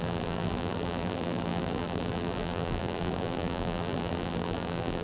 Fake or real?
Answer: fake